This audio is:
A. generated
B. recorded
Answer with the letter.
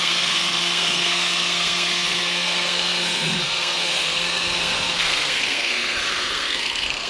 A